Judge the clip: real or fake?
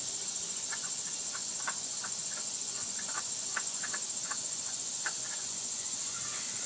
fake